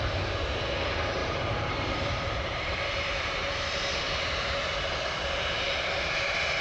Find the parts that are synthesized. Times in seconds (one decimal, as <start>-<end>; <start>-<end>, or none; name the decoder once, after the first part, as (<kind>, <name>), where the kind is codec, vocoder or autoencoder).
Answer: 1.2-3.5 (vocoder, BigVGAN v2)